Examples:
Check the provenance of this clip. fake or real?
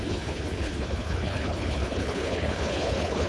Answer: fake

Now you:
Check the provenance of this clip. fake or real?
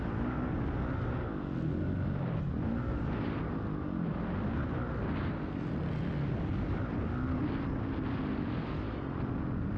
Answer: real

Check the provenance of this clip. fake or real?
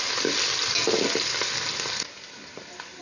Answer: real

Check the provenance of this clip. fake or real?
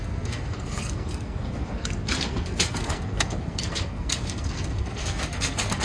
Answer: fake